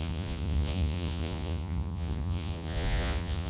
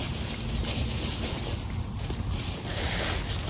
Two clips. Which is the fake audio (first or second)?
first